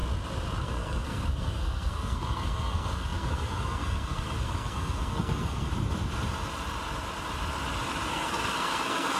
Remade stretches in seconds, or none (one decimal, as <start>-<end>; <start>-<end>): 0.6-5.7; 8.1-9.2